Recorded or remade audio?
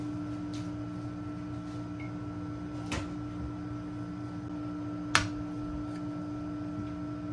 recorded